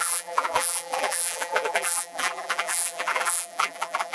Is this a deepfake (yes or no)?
yes